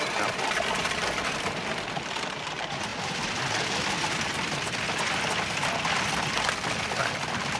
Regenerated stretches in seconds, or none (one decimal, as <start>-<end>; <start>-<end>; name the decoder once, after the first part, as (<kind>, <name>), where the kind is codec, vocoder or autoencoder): 0.0-2.9 (vocoder, BigVGAN v2); 6.1-7.6